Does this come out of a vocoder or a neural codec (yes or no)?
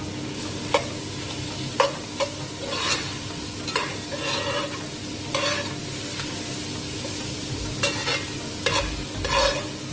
no